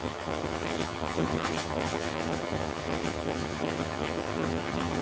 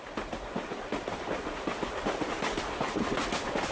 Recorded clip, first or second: second